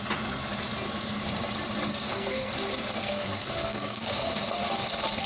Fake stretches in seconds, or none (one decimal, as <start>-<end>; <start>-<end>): 1.9-2.5; 3.0-4.3